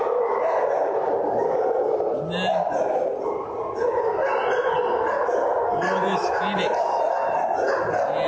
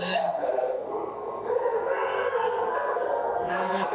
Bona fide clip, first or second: first